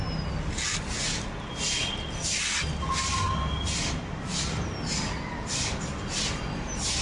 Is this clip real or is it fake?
real